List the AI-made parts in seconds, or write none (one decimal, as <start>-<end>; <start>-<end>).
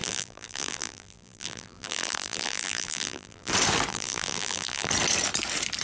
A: 0.0-3.5; 3.9-4.9